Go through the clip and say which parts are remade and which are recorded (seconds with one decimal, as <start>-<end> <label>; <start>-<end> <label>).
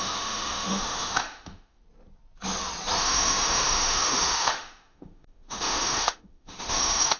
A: 0.0-1.8 remade; 1.8-3.0 recorded; 3.0-7.2 remade